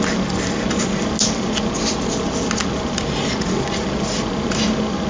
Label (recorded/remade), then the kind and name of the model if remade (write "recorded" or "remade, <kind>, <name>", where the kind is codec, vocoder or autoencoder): recorded